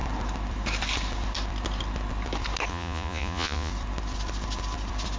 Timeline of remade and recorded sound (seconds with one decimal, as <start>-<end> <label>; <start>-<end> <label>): 0.0-2.7 recorded; 2.7-3.7 remade; 3.7-5.2 recorded